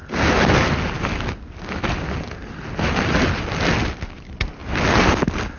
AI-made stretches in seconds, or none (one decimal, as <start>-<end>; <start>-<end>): none